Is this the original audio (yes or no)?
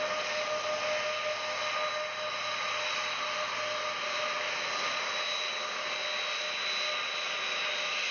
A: yes